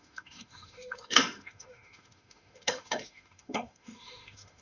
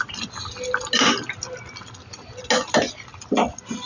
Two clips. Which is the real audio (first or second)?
second